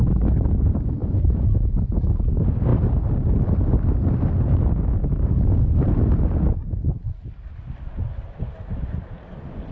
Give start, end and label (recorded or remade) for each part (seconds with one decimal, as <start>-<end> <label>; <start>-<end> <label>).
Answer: 0.0-1.0 recorded; 1.0-2.0 remade; 2.0-9.7 recorded